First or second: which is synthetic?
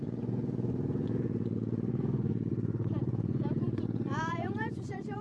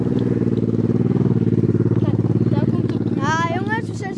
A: first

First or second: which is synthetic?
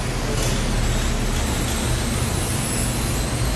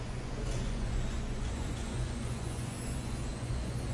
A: second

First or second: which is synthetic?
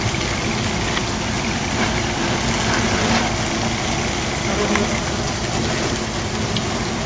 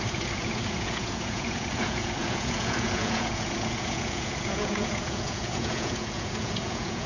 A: second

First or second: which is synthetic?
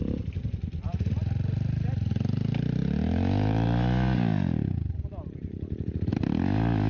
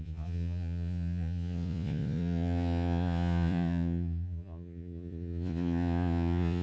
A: second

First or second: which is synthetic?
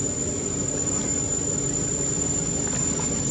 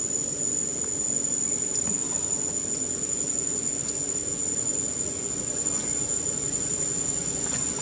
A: second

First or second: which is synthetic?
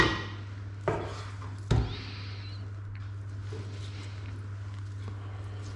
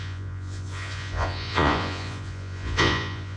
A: second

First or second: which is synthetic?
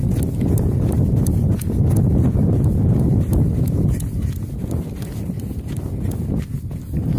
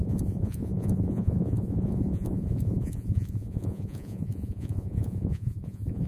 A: second